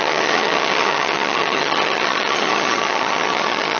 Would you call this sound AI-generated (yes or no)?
yes